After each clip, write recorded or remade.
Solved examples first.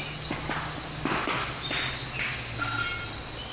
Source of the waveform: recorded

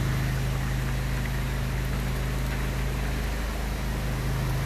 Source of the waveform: recorded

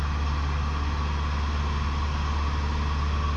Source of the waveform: recorded